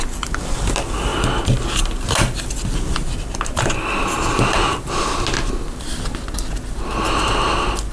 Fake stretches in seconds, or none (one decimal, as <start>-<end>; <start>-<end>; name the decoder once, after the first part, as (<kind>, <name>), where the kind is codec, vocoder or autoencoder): none